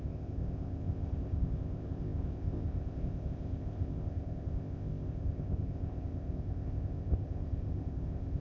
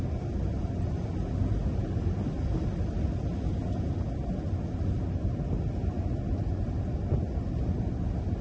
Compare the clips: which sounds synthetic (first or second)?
first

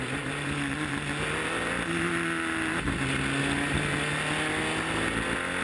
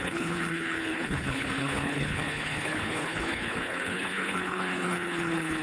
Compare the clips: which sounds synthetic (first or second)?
second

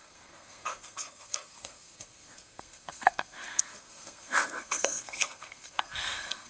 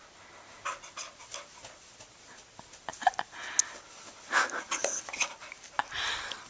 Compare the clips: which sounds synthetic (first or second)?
first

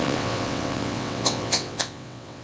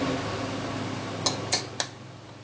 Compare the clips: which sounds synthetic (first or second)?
first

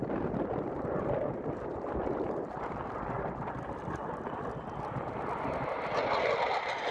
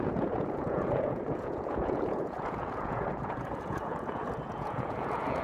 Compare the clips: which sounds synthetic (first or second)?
second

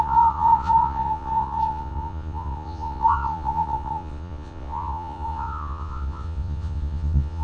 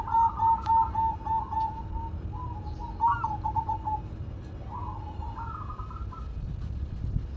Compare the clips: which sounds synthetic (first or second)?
first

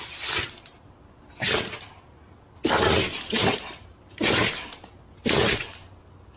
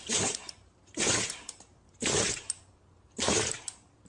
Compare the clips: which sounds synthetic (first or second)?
second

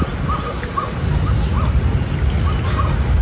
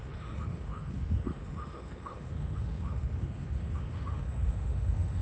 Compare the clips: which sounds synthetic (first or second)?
second